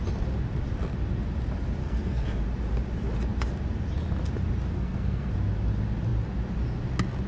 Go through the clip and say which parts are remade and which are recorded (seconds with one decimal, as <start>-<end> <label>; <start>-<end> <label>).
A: 0.0-1.8 recorded; 1.8-2.4 remade; 2.4-4.7 recorded; 4.7-5.3 remade; 5.3-7.3 recorded